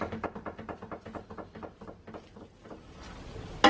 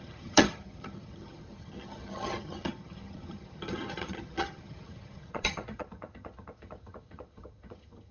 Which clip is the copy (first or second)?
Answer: second